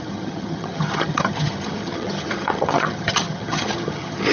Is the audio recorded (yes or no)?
no